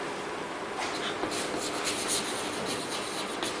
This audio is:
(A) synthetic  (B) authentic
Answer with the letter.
B